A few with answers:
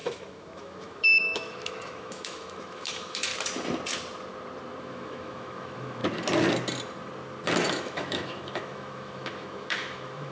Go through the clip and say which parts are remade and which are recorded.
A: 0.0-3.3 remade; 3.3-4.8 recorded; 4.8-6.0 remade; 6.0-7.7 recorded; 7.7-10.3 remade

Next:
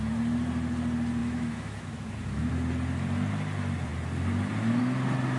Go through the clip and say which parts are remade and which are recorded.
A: 0.0-1.2 recorded; 1.2-2.5 remade; 2.5-5.4 recorded